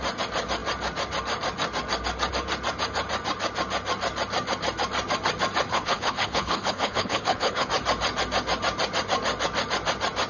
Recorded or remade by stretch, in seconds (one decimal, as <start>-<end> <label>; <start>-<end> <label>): 0.0-5.7 recorded; 5.7-7.7 remade; 7.7-10.3 recorded